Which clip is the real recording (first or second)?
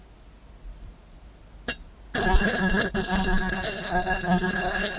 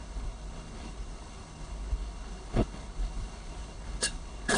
first